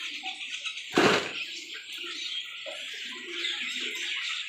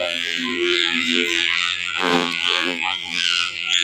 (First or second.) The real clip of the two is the first